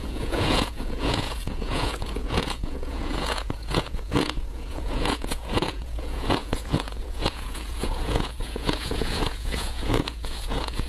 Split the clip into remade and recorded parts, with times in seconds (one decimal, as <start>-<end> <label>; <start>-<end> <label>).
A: 0.0-10.9 remade

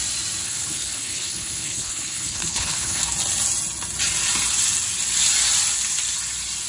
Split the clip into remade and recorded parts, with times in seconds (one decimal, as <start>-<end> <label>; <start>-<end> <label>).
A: 0.0-0.4 recorded; 0.4-3.0 remade; 3.0-6.7 recorded

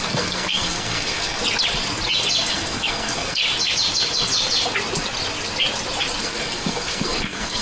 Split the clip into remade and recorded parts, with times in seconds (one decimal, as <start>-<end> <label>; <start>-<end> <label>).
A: 0.0-1.4 remade; 1.4-2.5 recorded; 2.5-3.4 remade; 3.4-6.2 recorded; 6.2-7.6 remade